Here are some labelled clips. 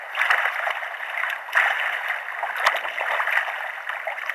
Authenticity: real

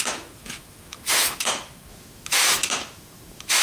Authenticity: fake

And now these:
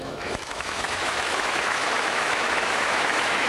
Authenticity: fake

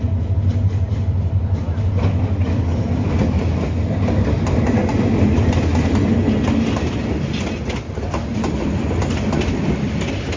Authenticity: real